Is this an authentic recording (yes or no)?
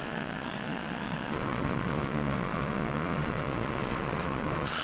no